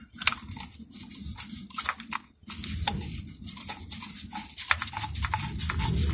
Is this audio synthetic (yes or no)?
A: no